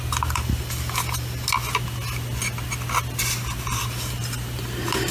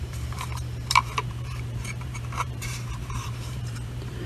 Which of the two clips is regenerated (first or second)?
second